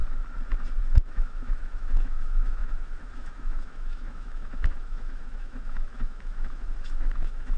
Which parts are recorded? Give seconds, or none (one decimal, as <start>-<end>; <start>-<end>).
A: 0.0-0.8